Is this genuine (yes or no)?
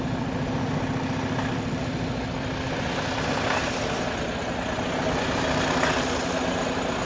yes